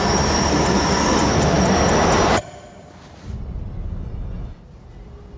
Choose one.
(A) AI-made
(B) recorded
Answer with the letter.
B